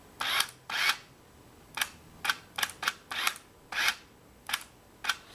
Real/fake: real